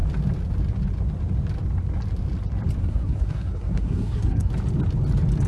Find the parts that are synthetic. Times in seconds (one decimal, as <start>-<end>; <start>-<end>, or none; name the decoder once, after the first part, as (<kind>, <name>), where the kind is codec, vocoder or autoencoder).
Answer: 2.8-4.5 (codec, SNAC)